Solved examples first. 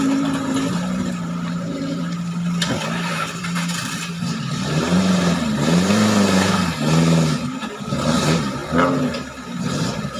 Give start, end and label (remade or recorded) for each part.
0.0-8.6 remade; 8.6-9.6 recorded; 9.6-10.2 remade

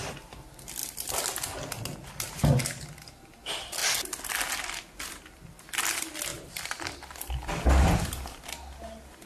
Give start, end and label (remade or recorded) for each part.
0.0-0.8 remade; 0.8-3.2 recorded; 3.2-3.8 remade; 3.8-5.1 recorded; 5.1-9.3 remade

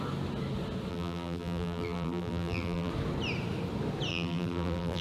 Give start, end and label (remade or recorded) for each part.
0.0-0.9 recorded; 0.9-2.9 remade; 2.9-4.1 recorded; 4.1-5.0 remade

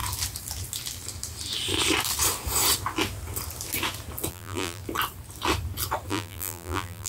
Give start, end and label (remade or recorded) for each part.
0.0-4.3 recorded; 4.3-4.8 remade; 4.8-6.1 recorded; 6.1-7.1 remade

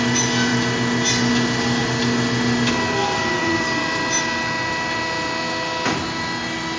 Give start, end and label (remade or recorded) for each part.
0.0-3.0 recorded; 3.0-4.0 remade; 4.0-6.8 recorded

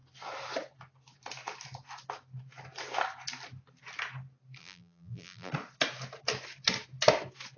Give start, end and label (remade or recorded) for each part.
0.0-4.6 recorded; 4.6-5.5 remade; 5.5-7.6 recorded